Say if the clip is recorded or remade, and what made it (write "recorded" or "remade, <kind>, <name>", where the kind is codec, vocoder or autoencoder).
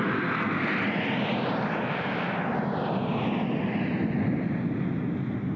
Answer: recorded